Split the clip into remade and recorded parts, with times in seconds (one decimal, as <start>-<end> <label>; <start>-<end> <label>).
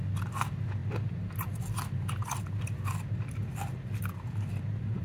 0.0-5.0 recorded